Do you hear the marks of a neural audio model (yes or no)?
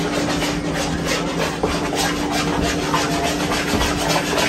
no